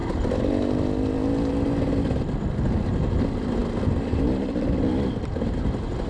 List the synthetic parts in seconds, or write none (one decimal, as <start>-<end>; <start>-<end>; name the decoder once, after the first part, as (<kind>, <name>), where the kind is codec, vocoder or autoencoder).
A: none

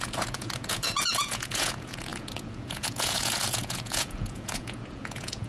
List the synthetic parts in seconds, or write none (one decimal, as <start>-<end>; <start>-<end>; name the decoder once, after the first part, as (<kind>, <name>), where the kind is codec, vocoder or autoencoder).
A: 0.0-5.5 (vocoder, Vocos)

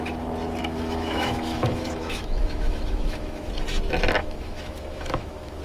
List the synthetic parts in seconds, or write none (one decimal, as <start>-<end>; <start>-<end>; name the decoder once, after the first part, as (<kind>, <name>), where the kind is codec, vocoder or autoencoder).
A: 0.6-3.5 (autoencoder, DAC-VAE); 4.2-5.6

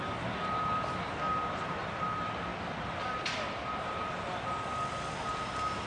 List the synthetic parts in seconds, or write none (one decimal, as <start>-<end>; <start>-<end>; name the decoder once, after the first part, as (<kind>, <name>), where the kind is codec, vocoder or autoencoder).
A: none